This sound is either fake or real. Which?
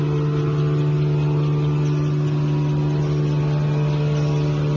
real